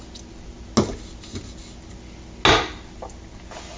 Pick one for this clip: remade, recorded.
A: recorded